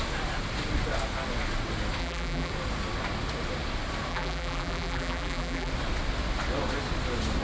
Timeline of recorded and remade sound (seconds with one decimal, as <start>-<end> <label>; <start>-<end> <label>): 0.0-2.0 recorded; 2.0-2.5 remade; 2.5-4.1 recorded; 4.1-5.7 remade; 5.7-7.4 recorded